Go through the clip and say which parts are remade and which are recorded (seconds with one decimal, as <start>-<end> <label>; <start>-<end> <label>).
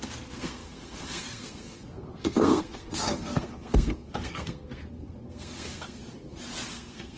0.0-6.0 remade; 6.0-6.7 recorded; 6.7-7.2 remade